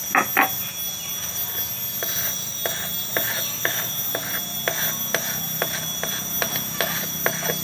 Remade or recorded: recorded